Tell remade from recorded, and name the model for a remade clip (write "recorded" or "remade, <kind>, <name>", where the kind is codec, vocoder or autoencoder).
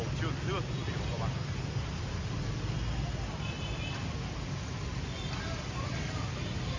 recorded